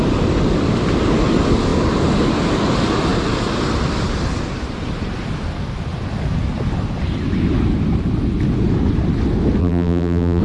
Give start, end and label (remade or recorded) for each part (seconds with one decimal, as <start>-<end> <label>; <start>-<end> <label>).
0.0-9.6 recorded; 9.6-10.4 remade